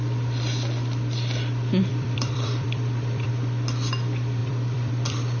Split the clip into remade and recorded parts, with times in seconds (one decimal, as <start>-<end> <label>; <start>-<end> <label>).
0.0-1.9 recorded; 1.9-3.3 remade; 3.3-4.4 recorded; 4.4-5.4 remade